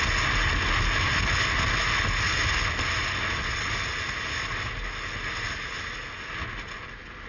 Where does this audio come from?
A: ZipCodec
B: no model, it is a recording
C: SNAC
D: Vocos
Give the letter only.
B